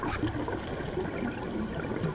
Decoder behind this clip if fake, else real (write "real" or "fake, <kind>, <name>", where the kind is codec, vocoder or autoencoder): real